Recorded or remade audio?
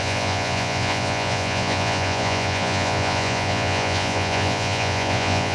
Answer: remade